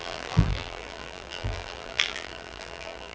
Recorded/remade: remade